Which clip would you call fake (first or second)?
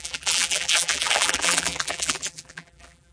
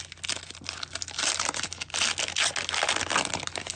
first